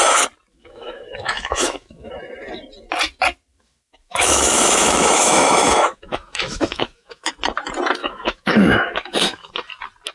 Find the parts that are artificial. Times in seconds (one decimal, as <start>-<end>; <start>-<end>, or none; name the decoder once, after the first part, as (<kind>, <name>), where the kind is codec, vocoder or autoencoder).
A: 0.5-2.1 (autoencoder, DAC-VAE); 3.5-7.3; 8.0-9.5